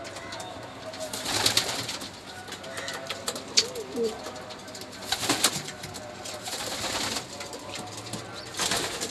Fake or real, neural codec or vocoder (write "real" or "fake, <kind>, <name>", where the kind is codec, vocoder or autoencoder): real